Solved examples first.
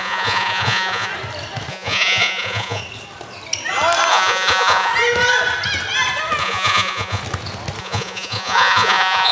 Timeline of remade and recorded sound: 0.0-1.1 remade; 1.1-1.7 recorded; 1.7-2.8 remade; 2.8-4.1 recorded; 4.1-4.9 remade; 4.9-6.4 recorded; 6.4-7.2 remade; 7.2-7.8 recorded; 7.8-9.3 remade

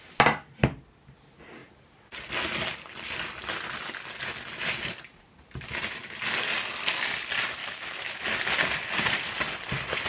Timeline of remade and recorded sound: 0.0-7.6 recorded; 7.6-8.2 remade; 8.2-10.1 recorded

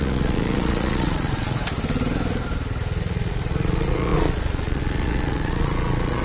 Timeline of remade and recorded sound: 0.0-1.6 remade; 1.6-3.0 recorded; 3.0-6.2 remade

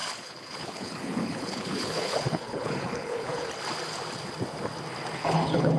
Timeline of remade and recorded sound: 0.0-3.5 remade; 3.5-5.2 recorded; 5.2-5.8 remade